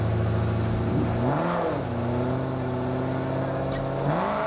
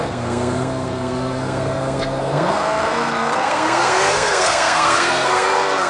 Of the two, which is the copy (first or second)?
second